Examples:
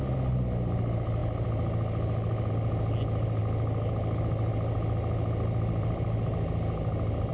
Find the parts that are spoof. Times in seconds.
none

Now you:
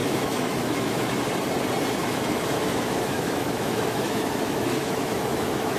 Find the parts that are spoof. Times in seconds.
0.0-1.1 (autoencoder, DAC-VAE); 2.0-5.8